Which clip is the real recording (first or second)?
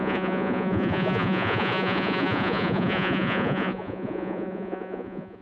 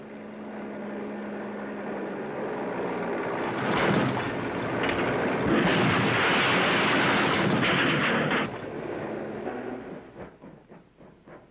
second